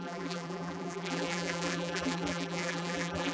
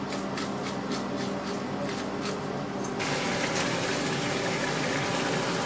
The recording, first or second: second